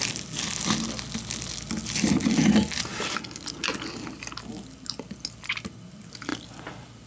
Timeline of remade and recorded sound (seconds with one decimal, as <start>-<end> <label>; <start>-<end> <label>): 0.0-7.1 recorded